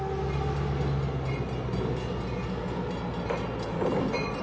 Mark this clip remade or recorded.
recorded